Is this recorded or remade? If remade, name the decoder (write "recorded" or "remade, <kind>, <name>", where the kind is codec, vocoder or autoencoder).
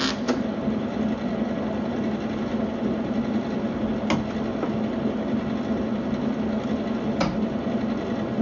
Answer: recorded